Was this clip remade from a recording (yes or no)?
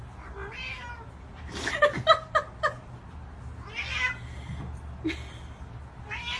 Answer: no